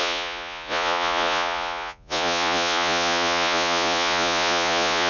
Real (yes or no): no